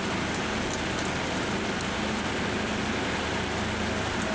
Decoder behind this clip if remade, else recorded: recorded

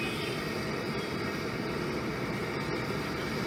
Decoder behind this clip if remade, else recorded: recorded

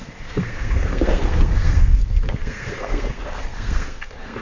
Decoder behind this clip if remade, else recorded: remade, codec, SNAC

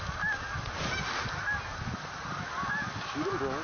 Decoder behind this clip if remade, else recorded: recorded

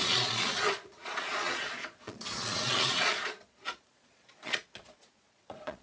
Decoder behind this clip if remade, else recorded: remade, vocoder, Vocos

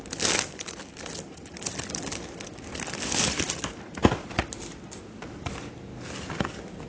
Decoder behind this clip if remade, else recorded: recorded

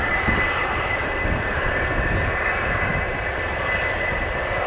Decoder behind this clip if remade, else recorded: recorded